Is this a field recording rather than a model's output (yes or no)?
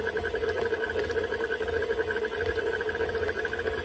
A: yes